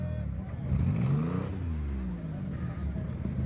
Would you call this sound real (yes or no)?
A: yes